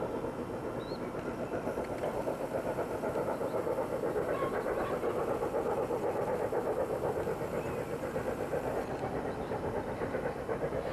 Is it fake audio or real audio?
real